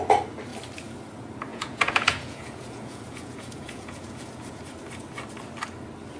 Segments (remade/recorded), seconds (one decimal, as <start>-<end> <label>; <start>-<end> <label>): 0.0-1.5 recorded; 1.5-4.6 remade; 4.6-6.2 recorded